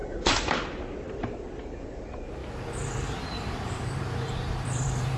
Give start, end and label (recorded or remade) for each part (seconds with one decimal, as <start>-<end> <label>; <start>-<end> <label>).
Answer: 0.0-2.4 recorded; 2.4-5.2 remade